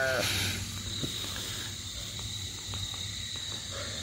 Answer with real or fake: real